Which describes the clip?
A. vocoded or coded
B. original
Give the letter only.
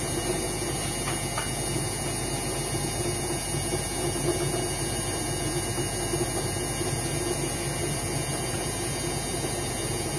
B